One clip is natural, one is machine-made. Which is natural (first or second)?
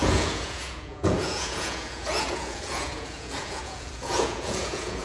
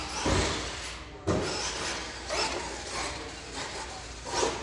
second